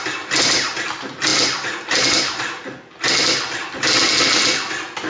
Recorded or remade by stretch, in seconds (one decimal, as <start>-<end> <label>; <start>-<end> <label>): 0.0-5.1 recorded